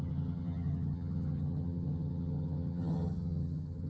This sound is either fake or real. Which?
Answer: fake